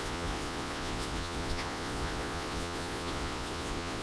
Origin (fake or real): fake